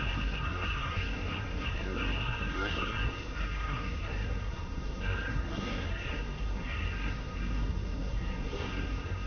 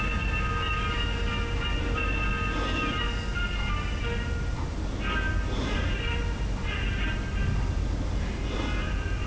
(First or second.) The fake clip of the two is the first